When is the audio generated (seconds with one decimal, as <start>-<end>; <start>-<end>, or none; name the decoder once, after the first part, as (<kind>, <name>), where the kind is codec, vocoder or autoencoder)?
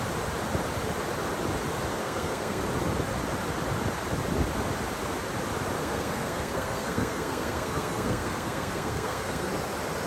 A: 2.0-2.6 (codec, SNAC); 5.8-9.5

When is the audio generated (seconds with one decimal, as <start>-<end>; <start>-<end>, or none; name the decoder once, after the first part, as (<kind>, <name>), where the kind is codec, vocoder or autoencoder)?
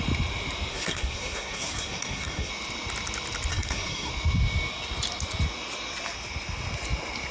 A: 0.7-2.5 (codec, SNAC); 3.5-4.1